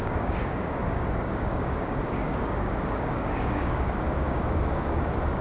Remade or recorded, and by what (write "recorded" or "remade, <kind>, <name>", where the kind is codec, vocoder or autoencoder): remade, codec, DAC